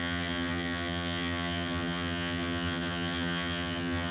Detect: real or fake fake